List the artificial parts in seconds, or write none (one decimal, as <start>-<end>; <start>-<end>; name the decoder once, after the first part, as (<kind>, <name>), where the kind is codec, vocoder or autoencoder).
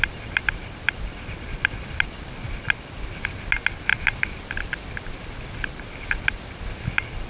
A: none